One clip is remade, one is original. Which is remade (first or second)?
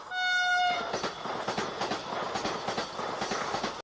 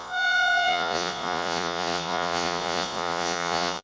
second